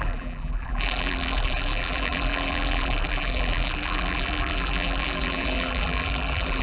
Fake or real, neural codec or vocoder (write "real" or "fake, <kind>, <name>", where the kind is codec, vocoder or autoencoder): fake, vocoder, BigVGAN v2